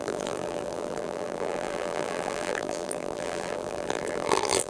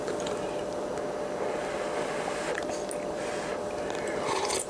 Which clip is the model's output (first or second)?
first